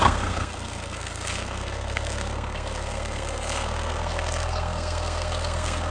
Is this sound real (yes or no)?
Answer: no